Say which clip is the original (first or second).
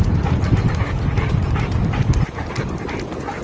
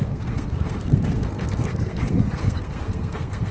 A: first